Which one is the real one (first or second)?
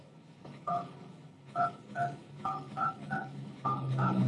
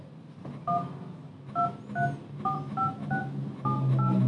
second